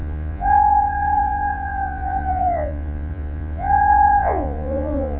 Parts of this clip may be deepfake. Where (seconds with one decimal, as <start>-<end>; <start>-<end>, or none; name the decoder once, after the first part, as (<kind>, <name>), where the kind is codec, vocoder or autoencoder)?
0.0-5.2 (vocoder, Vocos)

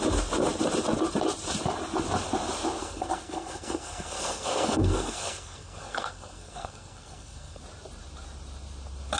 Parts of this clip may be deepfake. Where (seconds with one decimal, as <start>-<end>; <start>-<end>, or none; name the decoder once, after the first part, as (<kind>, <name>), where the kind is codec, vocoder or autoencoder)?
2.8-7.6 (codec, SNAC)

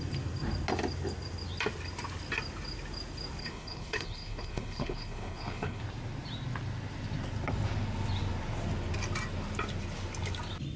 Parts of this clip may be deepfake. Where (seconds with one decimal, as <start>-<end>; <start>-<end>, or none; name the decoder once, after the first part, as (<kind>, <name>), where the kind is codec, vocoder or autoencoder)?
3.4-5.8 (codec, HILCodec)

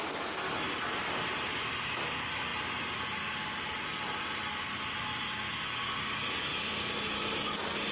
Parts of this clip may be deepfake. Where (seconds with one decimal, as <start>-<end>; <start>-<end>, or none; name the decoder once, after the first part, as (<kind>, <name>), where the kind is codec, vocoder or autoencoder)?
none

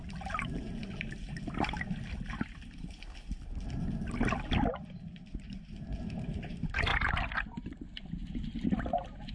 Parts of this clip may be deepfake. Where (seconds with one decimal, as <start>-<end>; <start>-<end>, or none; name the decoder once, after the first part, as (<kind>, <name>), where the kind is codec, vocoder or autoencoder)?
none

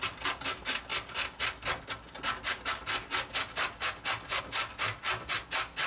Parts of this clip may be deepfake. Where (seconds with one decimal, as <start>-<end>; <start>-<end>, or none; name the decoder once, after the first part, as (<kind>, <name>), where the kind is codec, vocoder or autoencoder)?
none